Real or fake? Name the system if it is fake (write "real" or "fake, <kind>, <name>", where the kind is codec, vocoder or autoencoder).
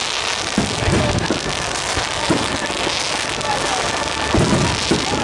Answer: real